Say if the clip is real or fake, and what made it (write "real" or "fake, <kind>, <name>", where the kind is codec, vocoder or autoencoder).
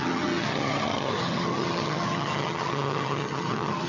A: fake, vocoder, HiFi-GAN